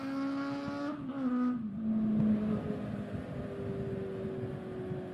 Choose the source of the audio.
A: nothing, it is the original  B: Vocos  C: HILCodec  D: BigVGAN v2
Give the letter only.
A